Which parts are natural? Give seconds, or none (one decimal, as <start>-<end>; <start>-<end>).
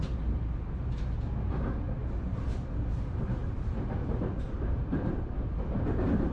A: 0.0-2.0; 2.8-6.3